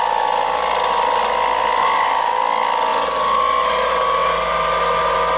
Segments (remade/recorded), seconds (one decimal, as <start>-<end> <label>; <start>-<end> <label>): 0.0-1.8 recorded; 1.8-2.4 remade; 2.4-5.4 recorded